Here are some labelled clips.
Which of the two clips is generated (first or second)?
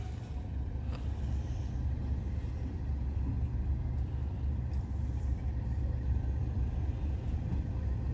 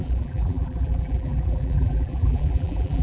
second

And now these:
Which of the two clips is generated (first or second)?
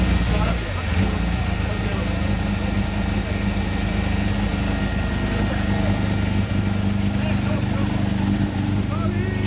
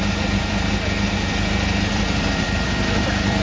second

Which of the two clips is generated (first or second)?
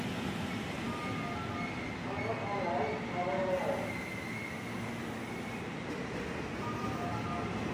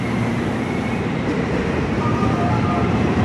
second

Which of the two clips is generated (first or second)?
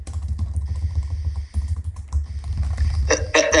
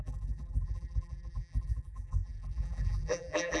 second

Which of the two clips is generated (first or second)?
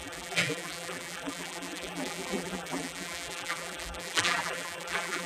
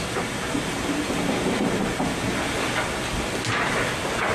first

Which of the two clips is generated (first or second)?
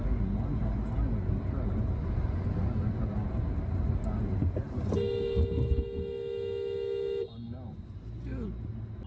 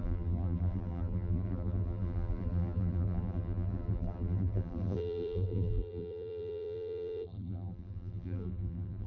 second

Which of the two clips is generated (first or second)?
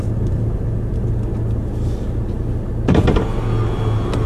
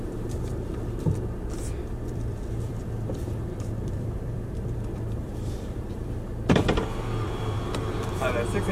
second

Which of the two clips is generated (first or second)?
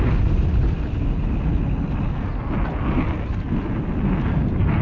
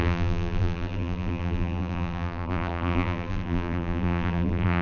second